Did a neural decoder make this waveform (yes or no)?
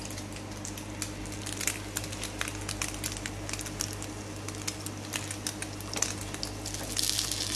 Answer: no